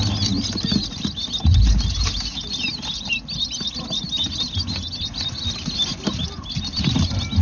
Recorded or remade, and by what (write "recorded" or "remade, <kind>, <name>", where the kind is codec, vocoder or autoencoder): recorded